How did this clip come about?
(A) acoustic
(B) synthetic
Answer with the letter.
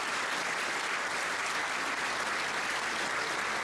A